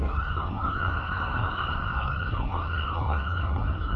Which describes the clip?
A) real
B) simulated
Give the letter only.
B